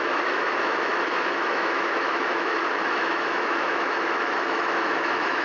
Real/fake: fake